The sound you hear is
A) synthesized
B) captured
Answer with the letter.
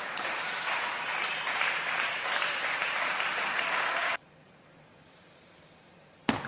A